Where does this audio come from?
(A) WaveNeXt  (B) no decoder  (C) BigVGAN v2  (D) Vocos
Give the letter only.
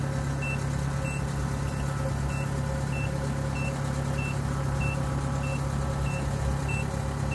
B